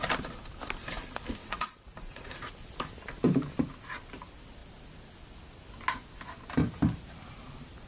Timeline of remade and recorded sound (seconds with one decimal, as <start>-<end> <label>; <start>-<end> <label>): 0.0-1.4 recorded; 1.4-2.5 remade; 2.5-7.9 recorded